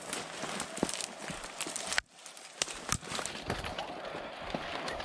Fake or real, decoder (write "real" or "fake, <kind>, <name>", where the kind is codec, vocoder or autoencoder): real